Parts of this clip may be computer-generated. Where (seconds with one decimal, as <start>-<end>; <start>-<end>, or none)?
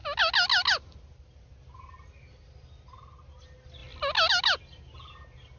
none